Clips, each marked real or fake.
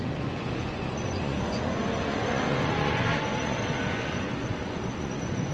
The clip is fake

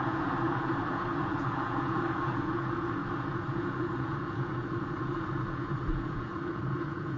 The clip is fake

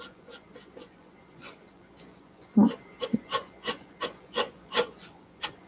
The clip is fake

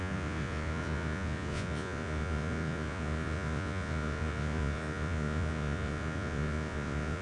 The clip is fake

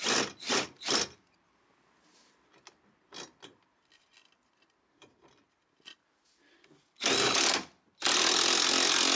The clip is real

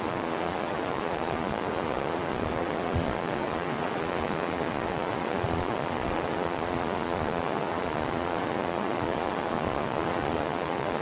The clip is fake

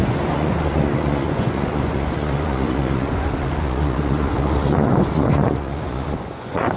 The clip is fake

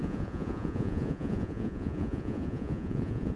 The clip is fake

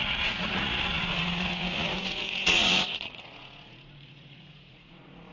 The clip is fake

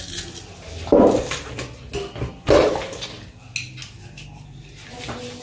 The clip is real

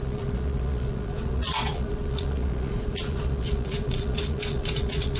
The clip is fake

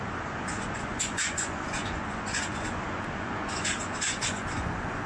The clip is fake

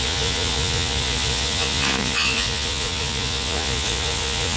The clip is fake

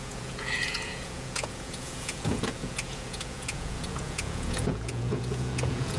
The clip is fake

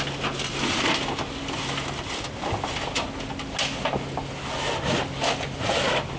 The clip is real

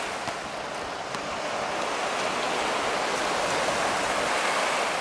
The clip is real